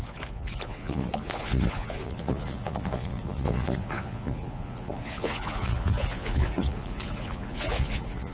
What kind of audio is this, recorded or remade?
remade